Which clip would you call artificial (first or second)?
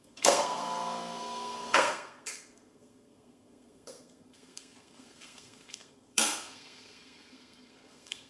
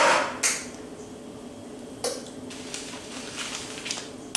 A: first